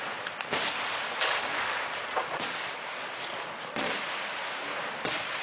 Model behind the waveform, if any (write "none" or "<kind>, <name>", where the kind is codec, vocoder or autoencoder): none